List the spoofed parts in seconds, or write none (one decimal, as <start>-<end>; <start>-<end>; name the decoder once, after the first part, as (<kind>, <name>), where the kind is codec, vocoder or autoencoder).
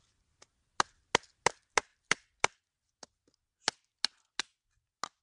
none